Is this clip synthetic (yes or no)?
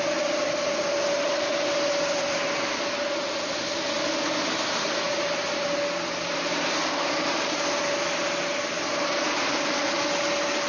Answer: no